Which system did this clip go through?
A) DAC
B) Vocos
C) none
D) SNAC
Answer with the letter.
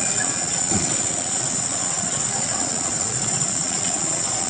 B